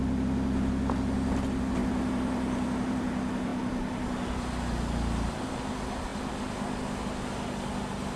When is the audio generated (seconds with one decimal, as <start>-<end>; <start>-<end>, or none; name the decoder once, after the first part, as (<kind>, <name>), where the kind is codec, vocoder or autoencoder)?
none